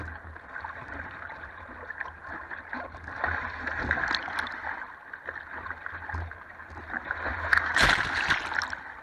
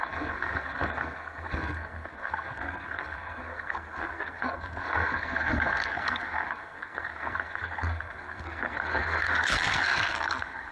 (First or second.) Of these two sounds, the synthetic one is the second